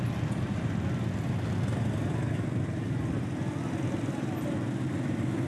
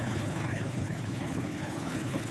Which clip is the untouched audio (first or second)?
first